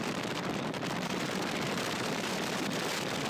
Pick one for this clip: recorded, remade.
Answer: remade